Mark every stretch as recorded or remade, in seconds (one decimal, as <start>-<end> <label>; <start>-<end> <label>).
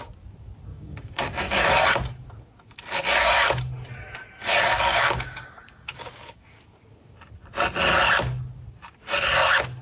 0.0-0.7 recorded; 0.7-1.6 remade; 1.6-4.9 recorded; 4.9-6.6 remade; 6.6-9.8 recorded